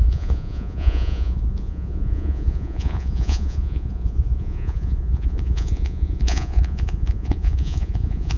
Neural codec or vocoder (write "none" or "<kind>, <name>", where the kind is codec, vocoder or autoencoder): vocoder, Vocos